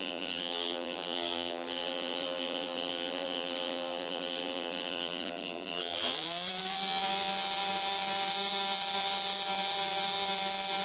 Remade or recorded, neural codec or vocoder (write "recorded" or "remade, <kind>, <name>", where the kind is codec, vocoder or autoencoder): remade, vocoder, BigVGAN v2